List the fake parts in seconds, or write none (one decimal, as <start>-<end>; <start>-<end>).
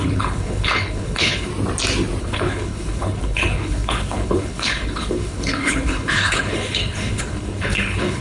0.0-1.5; 2.2-8.2